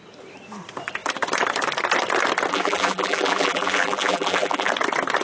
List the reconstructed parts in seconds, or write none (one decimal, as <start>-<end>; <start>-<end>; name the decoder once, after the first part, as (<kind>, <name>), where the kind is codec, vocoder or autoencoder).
2.5-4.7 (vocoder, BigVGAN v2)